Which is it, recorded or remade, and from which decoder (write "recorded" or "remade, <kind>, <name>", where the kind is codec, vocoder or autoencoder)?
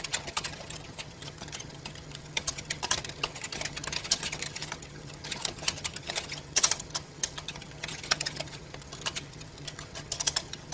remade, vocoder, HiFi-GAN